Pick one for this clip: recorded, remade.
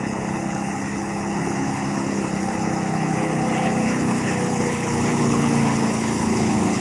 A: remade